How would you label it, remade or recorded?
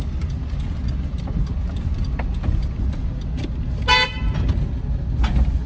recorded